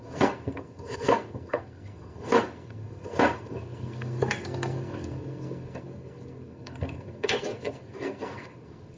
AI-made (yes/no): yes